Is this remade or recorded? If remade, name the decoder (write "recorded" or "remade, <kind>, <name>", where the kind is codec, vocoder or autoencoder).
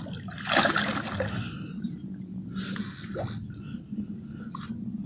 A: recorded